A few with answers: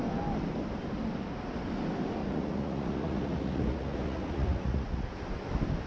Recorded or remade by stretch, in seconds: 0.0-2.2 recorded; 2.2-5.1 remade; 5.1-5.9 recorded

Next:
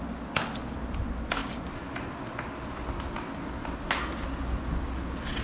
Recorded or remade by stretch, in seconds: 0.0-5.4 recorded

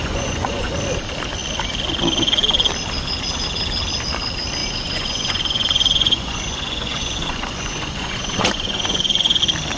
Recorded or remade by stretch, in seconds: 0.0-0.7 remade; 0.7-4.6 recorded; 4.6-9.4 remade; 9.4-9.8 recorded

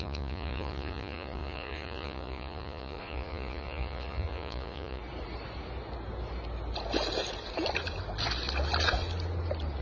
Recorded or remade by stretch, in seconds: 0.0-5.0 remade; 5.0-9.8 recorded

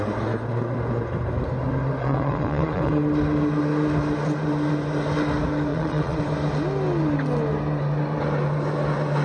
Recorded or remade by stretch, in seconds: 0.0-2.0 recorded; 2.0-2.9 remade; 2.9-5.7 recorded; 5.7-6.2 remade; 6.2-9.2 recorded